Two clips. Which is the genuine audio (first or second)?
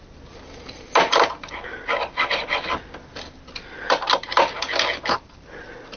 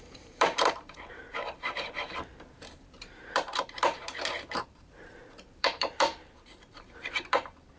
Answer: first